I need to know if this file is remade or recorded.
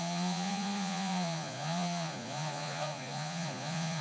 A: remade